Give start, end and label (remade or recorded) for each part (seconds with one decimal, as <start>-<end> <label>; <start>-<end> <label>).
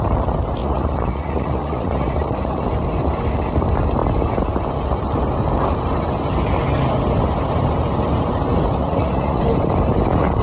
0.0-0.6 recorded; 0.6-2.6 remade; 2.6-8.8 recorded; 8.8-9.4 remade; 9.4-10.4 recorded